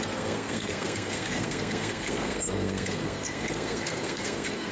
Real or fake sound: fake